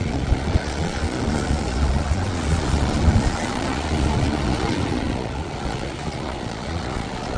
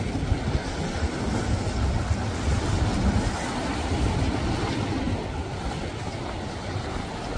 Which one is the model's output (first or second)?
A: first